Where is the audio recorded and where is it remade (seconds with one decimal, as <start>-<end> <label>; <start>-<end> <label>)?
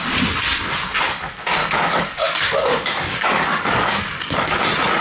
0.0-1.6 recorded; 1.6-4.6 remade; 4.6-5.0 recorded